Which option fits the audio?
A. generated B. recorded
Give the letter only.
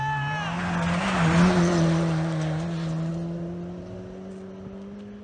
B